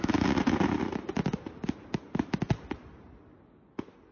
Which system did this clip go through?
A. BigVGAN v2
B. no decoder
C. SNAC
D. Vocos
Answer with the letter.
B